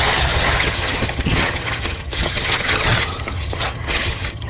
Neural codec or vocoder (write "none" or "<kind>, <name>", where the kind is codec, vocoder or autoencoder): vocoder, HiFi-GAN